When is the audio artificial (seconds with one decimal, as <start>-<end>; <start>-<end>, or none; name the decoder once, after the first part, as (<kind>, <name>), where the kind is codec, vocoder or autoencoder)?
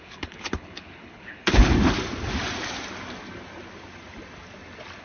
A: 0.0-1.7 (codec, HILCodec)